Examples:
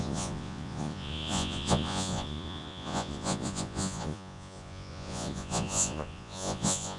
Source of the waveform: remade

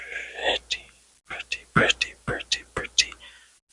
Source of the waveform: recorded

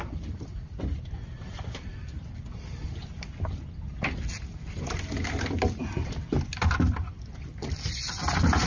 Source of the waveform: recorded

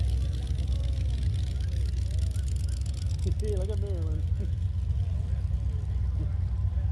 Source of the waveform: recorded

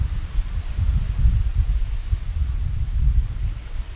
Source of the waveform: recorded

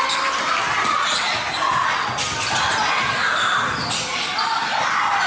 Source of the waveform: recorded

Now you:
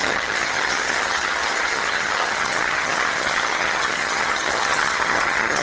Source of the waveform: remade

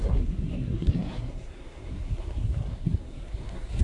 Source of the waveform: remade